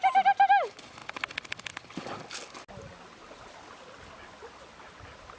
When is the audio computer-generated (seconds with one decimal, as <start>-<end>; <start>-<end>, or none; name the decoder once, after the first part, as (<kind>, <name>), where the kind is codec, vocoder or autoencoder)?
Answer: none